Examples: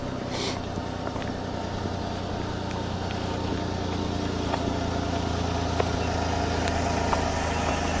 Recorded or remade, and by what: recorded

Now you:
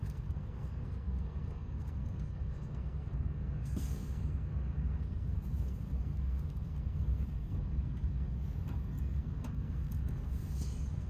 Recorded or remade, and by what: remade, codec, SNAC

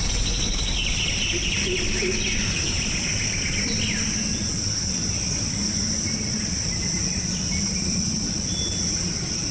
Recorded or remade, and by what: recorded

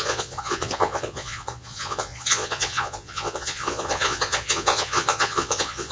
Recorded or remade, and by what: remade, vocoder, Vocos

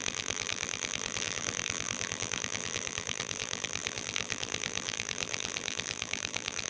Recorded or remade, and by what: remade, vocoder, BigVGAN v2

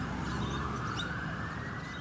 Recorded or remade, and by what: recorded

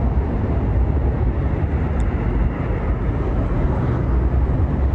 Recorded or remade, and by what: recorded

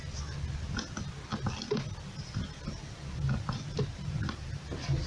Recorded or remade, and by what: recorded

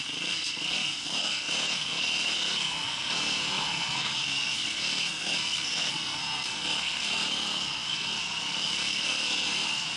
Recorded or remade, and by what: remade, codec, SNAC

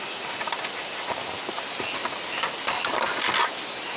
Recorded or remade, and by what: recorded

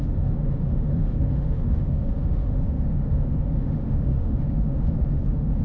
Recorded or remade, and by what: remade, autoencoder, DAC-VAE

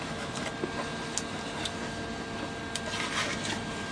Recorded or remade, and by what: recorded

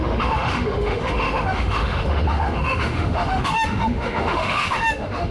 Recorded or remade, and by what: remade, autoencoder, DAC-VAE